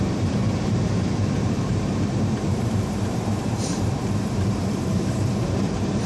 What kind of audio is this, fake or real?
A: fake